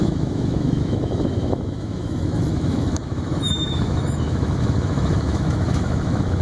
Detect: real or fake fake